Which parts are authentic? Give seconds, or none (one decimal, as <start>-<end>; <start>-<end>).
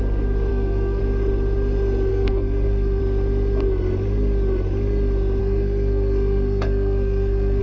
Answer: 0.0-0.5; 1.0-2.1; 3.0-5.4